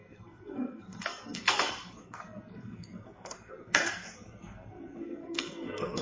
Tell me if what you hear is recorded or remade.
remade